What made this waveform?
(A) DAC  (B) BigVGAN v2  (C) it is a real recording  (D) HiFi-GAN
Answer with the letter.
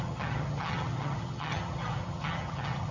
D